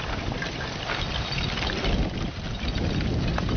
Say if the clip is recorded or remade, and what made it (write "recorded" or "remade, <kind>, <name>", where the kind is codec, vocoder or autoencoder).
recorded